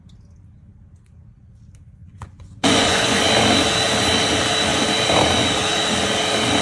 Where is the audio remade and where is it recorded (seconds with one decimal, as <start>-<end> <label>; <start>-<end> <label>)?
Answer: 0.0-2.0 recorded; 2.0-3.2 remade; 3.2-6.6 recorded